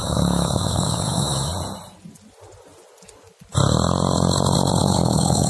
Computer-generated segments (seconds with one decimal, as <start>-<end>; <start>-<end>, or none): 0.0-1.5; 4.8-5.5